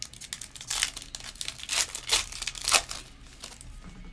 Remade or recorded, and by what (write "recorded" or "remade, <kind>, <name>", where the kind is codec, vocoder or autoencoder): recorded